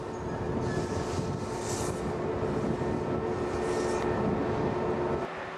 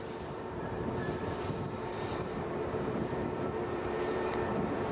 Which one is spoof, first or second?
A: second